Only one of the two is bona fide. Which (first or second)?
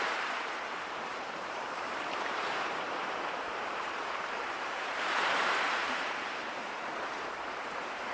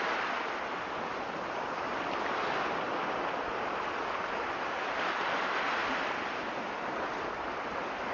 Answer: second